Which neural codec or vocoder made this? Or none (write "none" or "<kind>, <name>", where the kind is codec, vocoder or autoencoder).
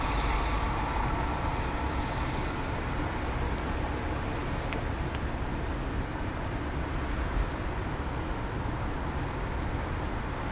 none